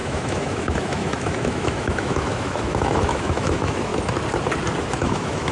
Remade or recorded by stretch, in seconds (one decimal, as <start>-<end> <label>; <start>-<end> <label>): 0.0-3.9 remade; 3.9-4.8 recorded; 4.8-5.5 remade